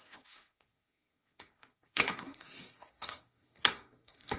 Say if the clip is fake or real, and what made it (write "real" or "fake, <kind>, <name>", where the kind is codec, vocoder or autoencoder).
fake, codec, SNAC